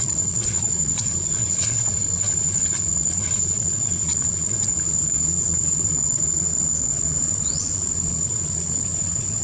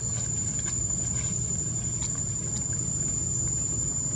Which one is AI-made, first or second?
first